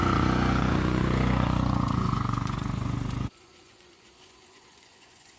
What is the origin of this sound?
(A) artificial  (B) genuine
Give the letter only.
A